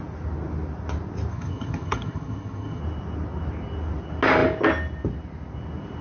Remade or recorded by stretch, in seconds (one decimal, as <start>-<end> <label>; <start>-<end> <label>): 0.0-1.3 recorded; 1.3-2.8 remade; 2.8-6.0 recorded

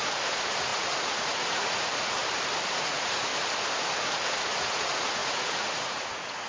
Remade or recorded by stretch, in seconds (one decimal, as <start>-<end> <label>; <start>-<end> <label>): 0.0-2.2 remade; 2.2-2.7 recorded; 2.7-3.3 remade; 3.3-4.0 recorded; 4.0-6.5 remade

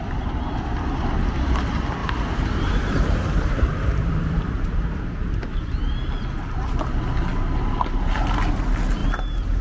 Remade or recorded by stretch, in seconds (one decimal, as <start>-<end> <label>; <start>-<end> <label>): 0.0-2.0 recorded; 2.0-5.0 remade; 5.0-9.6 recorded